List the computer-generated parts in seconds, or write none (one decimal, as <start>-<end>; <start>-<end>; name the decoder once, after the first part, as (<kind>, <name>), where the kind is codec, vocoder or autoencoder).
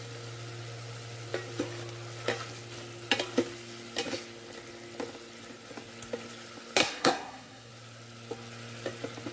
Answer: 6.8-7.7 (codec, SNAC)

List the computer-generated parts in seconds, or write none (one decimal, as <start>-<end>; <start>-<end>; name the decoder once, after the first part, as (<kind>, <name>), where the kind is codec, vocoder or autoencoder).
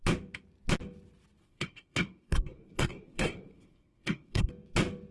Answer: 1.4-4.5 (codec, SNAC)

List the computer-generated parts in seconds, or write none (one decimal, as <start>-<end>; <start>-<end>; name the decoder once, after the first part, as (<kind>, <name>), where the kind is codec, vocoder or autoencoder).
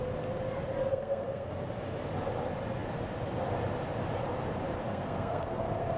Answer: 0.9-1.5 (codec, SNAC); 4.9-6.0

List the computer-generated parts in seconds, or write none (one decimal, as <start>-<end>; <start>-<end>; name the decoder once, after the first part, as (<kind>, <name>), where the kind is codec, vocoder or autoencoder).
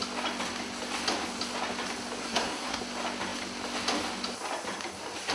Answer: 2.2-2.8 (codec, SNAC)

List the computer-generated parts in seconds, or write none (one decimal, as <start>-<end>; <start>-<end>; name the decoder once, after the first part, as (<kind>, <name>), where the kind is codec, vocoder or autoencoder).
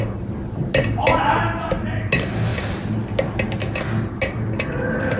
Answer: none